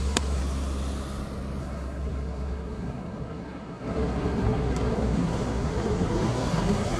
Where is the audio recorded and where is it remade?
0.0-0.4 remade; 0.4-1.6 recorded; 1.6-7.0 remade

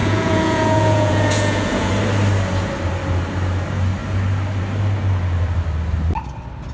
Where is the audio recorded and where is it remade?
0.0-1.9 remade; 1.9-6.7 recorded

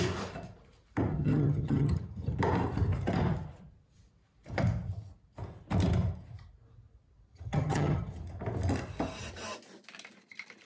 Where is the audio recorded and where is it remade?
0.0-1.1 recorded; 1.1-2.4 remade; 2.4-7.3 recorded; 7.3-8.2 remade; 8.2-10.7 recorded

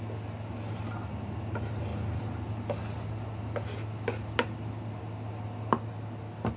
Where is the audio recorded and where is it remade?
0.0-6.6 recorded

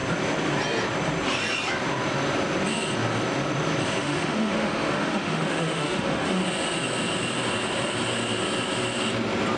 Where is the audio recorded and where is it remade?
0.0-4.0 recorded; 4.0-6.4 remade; 6.4-9.6 recorded